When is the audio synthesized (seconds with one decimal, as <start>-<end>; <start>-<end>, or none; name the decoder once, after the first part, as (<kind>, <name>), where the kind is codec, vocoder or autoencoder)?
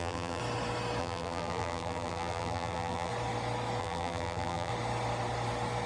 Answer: 0.0-0.4 (vocoder, BigVGAN v2); 1.0-3.1; 3.8-4.7